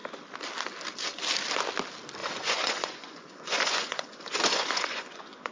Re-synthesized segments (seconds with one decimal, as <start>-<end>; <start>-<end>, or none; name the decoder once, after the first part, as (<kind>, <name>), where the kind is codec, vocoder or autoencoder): 2.2-5.5 (vocoder, Vocos)

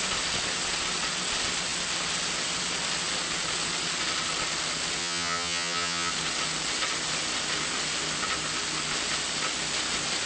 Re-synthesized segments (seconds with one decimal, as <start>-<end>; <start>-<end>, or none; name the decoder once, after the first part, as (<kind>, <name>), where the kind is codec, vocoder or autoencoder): 5.0-6.1 (vocoder, HiFi-GAN)

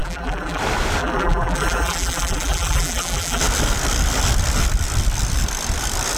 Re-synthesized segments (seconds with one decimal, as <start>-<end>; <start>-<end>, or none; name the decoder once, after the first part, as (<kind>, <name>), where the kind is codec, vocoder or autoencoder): 0.0-0.6 (vocoder, BigVGAN v2); 1.0-3.4

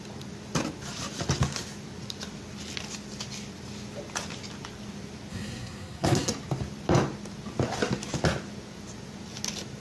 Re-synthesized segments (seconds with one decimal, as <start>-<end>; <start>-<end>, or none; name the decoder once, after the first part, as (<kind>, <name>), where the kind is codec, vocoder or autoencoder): 5.3-6.3 (codec, SNAC)

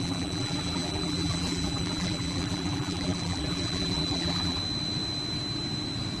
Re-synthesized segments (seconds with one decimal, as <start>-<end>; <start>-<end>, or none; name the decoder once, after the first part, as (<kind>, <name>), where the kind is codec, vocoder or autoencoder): 0.0-4.6 (vocoder, BigVGAN v2)

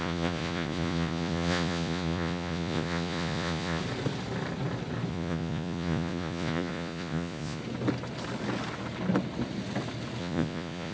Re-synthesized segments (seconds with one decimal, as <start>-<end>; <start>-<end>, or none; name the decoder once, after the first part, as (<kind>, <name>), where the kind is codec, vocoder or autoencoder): 0.0-3.8 (vocoder, Vocos); 5.1-7.6; 10.2-10.9

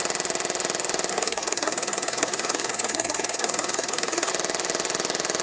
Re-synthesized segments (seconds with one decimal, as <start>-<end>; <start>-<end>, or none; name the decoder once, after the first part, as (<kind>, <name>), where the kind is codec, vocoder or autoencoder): 1.1-4.3 (codec, SNAC)

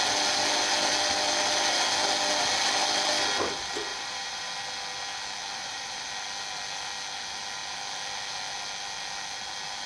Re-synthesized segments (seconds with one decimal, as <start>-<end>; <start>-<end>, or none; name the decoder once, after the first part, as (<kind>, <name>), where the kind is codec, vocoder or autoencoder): 3.9-4.5 (vocoder, BigVGAN v2); 5.4-6.1